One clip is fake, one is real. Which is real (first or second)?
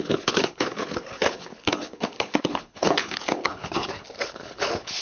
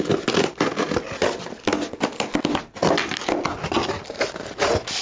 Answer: second